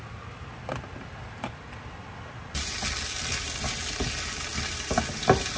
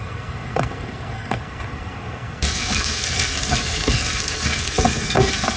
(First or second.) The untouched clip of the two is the first